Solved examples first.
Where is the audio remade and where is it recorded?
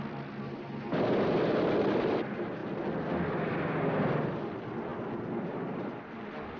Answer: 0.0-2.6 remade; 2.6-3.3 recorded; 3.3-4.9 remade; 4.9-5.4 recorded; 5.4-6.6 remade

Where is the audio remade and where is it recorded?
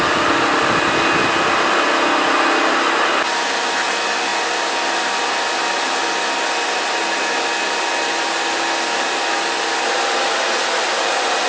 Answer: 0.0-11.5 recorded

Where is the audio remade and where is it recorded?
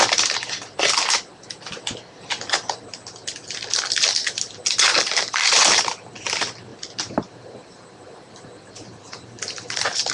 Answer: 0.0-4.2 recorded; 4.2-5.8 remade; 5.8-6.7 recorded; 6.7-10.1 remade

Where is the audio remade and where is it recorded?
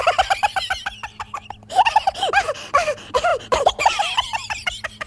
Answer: 0.0-5.1 recorded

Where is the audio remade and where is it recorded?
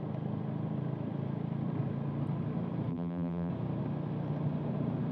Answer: 0.0-2.9 recorded; 2.9-3.5 remade; 3.5-5.1 recorded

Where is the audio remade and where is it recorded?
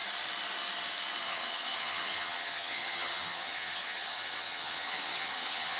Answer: 0.0-1.2 recorded; 1.2-5.8 remade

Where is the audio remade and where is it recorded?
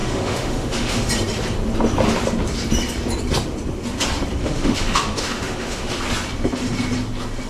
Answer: 0.0-1.1 remade; 1.1-4.4 recorded; 4.4-6.0 remade; 6.0-7.5 recorded